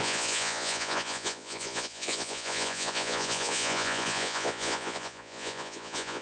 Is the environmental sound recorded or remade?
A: remade